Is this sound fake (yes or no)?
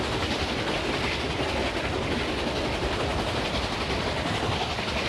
no